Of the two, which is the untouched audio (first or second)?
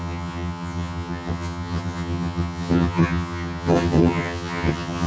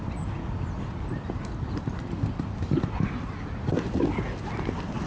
second